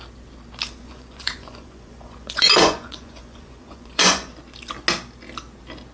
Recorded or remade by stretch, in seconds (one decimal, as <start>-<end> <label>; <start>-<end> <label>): 0.0-0.8 recorded; 0.8-4.3 remade; 4.3-5.9 recorded